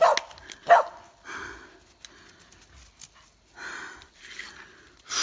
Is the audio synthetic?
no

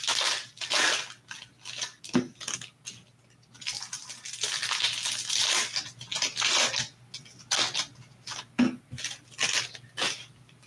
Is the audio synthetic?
no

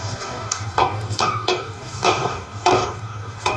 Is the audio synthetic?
yes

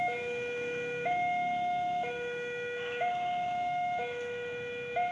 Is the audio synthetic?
yes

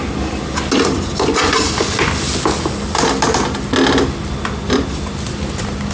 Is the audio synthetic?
no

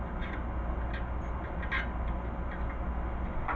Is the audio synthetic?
no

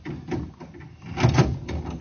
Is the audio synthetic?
no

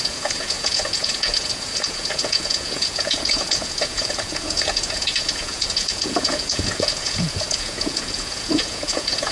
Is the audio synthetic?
yes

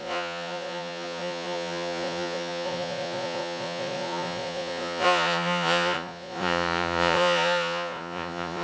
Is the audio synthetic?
yes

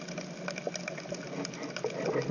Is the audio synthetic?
no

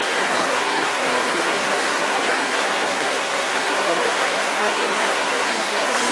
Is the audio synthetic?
yes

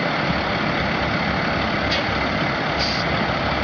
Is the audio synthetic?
no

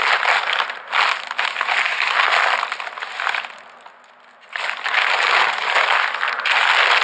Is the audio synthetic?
no